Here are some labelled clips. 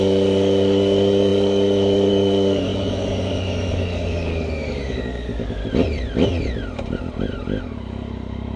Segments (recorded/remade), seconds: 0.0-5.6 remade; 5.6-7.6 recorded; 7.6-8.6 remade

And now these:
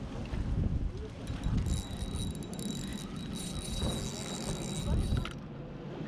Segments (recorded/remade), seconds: 0.0-6.1 recorded

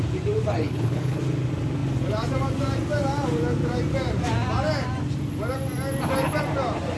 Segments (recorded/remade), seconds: 0.0-0.5 recorded; 0.5-1.2 remade; 1.2-7.0 recorded

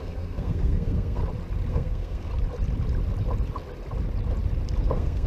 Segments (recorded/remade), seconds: 0.0-1.2 remade; 1.2-1.7 recorded; 1.7-2.3 remade; 2.3-4.8 recorded; 4.8-5.3 remade

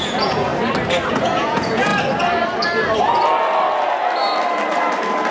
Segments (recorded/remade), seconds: 0.0-0.5 remade; 0.5-1.1 recorded; 1.1-1.9 remade; 1.9-5.3 recorded

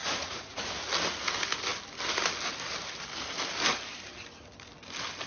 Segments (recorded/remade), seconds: 0.0-0.7 remade; 0.7-5.3 recorded

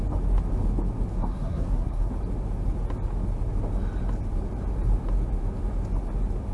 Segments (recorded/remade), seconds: 0.0-1.1 recorded; 1.1-2.1 remade; 2.1-6.5 recorded

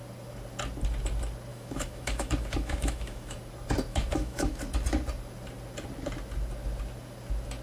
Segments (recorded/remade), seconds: 0.0-1.5 recorded; 1.5-3.4 remade; 3.4-3.9 recorded; 3.9-4.6 remade; 4.6-7.6 recorded